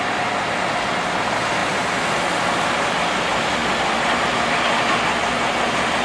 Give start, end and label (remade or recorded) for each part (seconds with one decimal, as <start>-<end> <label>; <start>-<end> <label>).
0.0-6.0 recorded